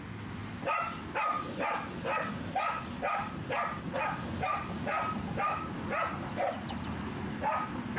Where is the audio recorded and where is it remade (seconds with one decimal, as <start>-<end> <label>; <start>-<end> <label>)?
0.0-8.0 recorded